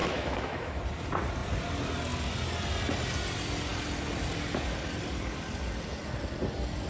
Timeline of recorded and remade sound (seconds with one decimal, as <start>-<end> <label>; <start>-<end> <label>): 0.0-0.8 remade; 0.8-6.9 recorded